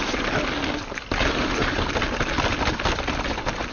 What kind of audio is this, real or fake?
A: real